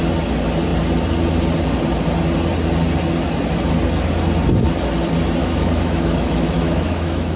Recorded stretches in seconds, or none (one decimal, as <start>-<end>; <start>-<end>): 0.0-5.4